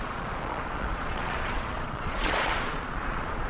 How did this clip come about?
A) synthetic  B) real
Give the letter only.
A